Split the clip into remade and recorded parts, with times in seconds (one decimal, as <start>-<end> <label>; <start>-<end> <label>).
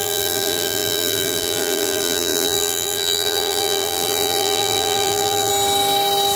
0.0-5.5 remade; 5.5-6.4 recorded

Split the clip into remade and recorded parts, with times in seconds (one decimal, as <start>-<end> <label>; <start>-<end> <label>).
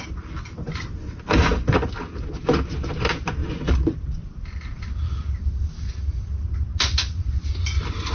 0.0-3.4 recorded; 3.4-4.0 remade; 4.0-8.1 recorded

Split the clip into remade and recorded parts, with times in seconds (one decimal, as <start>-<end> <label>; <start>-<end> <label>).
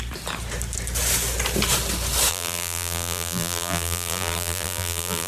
0.0-2.3 recorded; 2.3-5.3 remade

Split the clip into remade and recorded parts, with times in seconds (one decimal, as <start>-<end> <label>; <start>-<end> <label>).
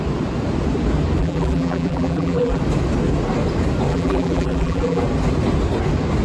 0.0-1.2 recorded; 1.2-2.6 remade; 2.6-3.9 recorded; 3.9-5.0 remade; 5.0-6.2 recorded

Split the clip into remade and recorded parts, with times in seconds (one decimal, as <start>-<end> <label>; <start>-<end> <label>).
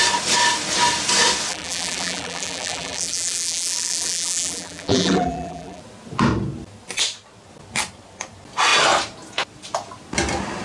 0.0-1.5 recorded; 1.5-5.8 remade; 5.8-10.6 recorded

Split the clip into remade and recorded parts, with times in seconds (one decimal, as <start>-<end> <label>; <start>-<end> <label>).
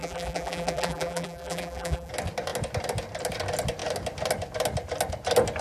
0.0-2.1 remade; 2.1-5.6 recorded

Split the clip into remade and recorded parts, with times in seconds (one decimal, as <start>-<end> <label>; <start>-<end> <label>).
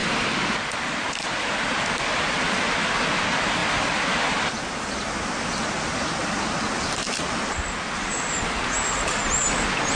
0.0-1.5 remade; 1.5-3.6 recorded; 3.6-4.4 remade; 4.4-6.2 recorded; 6.2-7.4 remade; 7.4-10.0 recorded